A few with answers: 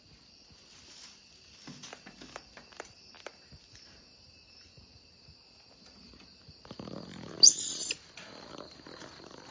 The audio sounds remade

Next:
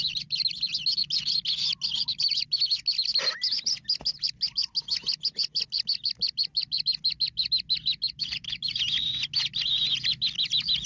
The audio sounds recorded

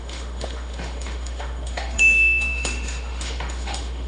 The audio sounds remade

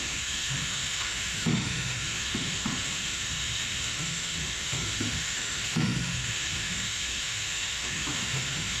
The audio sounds remade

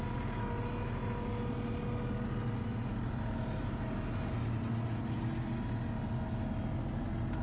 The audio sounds recorded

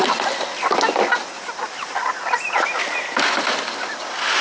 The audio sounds recorded